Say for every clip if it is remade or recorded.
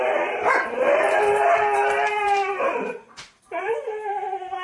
remade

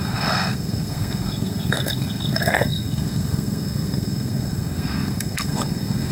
remade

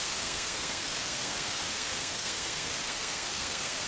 remade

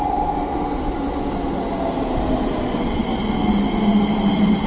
recorded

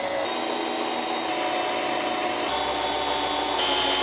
recorded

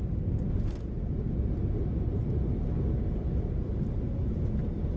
recorded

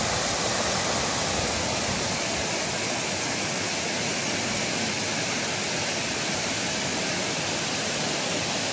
recorded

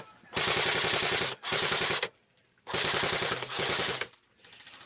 recorded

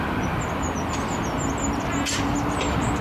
recorded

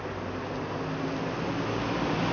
recorded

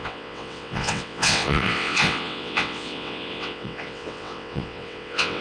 remade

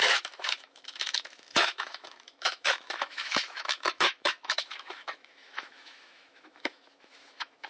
remade